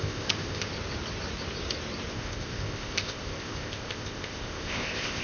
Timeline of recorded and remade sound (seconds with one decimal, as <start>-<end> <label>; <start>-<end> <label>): 0.0-0.7 remade; 0.7-2.1 recorded; 2.1-5.2 remade